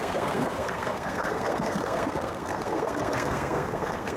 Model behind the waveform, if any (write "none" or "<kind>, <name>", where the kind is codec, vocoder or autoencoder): codec, SNAC